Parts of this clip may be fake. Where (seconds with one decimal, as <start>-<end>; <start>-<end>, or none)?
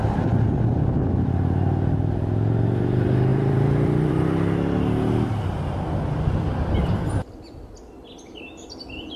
3.3-4.1